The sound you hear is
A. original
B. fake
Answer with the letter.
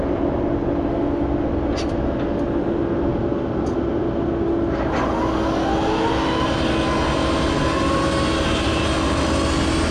A